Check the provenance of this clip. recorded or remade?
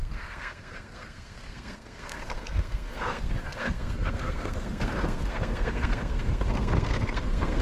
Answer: remade